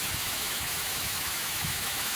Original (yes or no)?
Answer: no